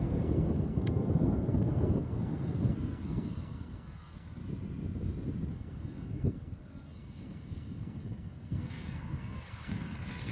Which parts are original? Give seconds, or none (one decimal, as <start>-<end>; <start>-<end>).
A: 4.4-5.5

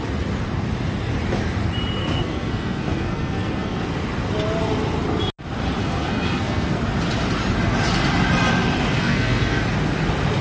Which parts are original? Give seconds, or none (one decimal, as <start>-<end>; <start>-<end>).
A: 0.0-2.0; 3.8-5.8; 6.8-9.0; 9.6-10.4

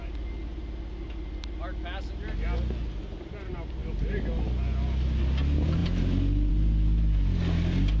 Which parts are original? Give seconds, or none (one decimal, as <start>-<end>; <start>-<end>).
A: 0.0-8.0